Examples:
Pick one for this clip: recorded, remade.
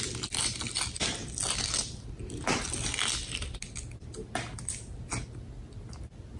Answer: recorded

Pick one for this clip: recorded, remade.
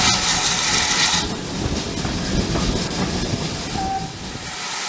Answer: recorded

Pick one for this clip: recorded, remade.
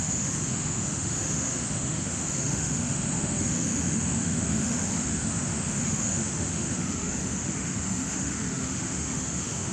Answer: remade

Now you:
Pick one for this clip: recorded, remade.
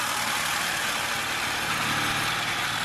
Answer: recorded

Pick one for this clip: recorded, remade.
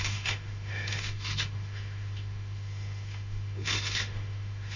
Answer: remade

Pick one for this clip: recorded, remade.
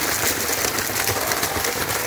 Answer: recorded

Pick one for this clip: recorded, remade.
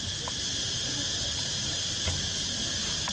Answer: recorded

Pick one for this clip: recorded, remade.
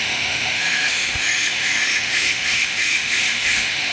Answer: remade